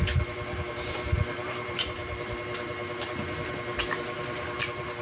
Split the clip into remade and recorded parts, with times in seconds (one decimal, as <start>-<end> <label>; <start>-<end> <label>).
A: 0.0-5.0 remade